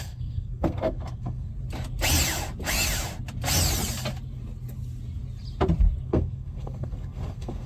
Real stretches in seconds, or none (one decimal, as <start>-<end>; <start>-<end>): 1.5-6.0